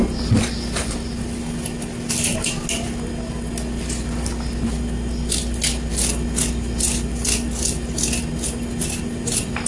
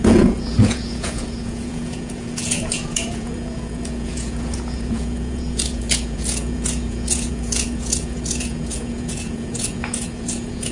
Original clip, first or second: first